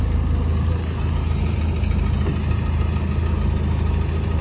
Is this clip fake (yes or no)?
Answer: no